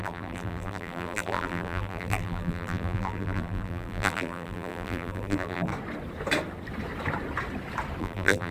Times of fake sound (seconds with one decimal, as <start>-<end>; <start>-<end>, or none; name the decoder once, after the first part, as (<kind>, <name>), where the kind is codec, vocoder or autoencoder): 0.0-5.7 (vocoder, BigVGAN v2); 8.0-8.5